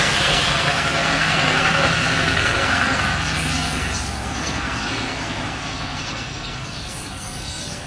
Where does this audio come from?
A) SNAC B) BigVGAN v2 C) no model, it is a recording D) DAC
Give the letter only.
A